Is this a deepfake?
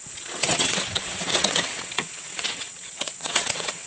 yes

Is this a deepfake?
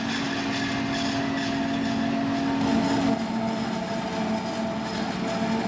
no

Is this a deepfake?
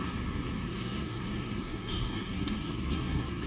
yes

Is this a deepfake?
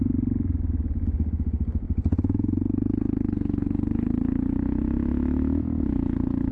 no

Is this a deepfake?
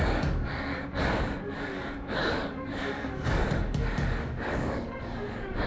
yes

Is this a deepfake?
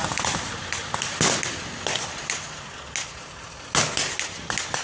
no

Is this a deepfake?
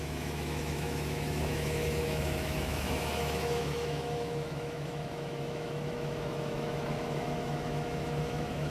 yes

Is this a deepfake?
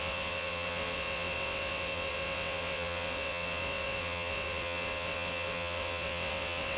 yes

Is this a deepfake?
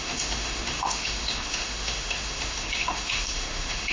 yes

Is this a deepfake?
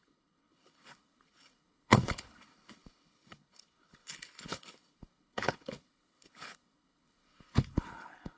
yes